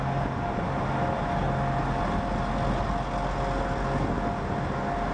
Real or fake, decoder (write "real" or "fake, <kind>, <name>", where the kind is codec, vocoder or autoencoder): real